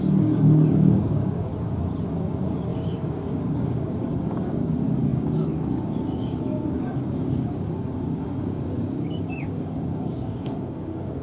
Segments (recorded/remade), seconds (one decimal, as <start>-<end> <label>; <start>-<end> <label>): 0.0-1.5 remade; 1.5-2.1 recorded; 2.1-11.2 remade